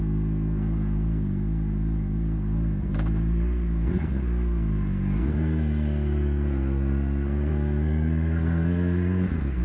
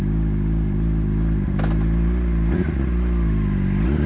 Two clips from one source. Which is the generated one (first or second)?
first